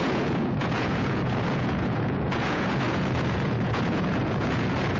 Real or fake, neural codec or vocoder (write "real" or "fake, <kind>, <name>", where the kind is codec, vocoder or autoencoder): fake, vocoder, Vocos